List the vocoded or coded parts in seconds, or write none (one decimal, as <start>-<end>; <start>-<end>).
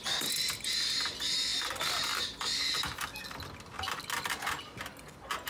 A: none